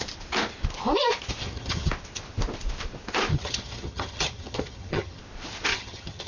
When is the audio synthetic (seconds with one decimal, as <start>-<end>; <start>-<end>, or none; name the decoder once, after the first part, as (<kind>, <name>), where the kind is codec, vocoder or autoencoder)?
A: 1.4-1.9 (vocoder, HiFi-GAN); 3.3-5.2; 5.7-6.3